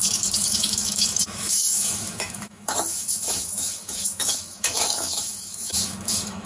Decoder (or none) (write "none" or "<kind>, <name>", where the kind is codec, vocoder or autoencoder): autoencoder, DAC-VAE